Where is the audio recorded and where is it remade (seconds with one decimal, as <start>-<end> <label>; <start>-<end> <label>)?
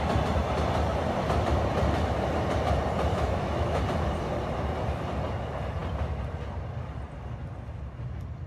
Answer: 0.0-3.1 recorded; 3.1-3.8 remade; 3.8-8.5 recorded